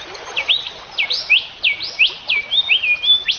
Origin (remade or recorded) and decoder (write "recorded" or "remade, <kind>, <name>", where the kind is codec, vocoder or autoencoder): recorded